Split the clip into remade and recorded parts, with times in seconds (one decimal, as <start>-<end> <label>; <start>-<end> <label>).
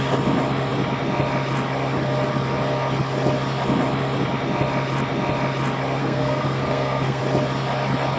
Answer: 0.0-6.0 recorded; 6.0-7.2 remade; 7.2-8.2 recorded